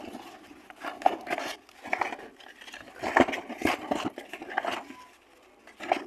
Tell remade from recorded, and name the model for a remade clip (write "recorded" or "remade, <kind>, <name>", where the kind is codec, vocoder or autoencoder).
recorded